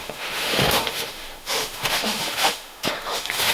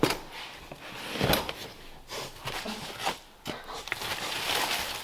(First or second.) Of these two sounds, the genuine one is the second